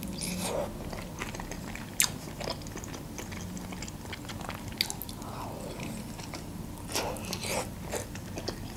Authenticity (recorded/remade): recorded